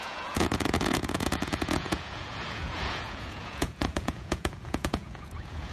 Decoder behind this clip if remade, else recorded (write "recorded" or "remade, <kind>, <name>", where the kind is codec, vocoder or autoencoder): remade, vocoder, Vocos